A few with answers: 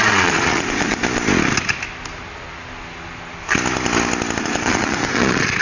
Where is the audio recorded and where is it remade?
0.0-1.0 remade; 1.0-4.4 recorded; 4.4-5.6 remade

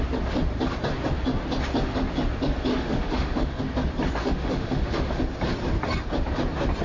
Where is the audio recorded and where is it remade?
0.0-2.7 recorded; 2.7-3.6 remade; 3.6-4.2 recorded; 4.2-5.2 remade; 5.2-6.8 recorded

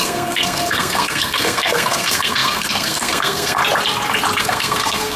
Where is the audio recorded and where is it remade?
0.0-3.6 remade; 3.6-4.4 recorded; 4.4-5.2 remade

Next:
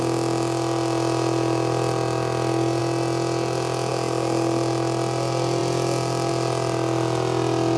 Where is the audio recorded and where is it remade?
0.0-7.8 recorded

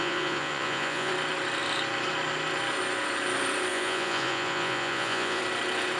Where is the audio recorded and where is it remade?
0.0-1.1 remade; 1.1-3.7 recorded; 3.7-5.4 remade; 5.4-6.0 recorded